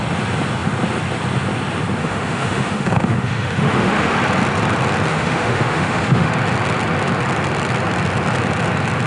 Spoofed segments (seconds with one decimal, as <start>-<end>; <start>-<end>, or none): 2.0-4.2; 5.1-6.3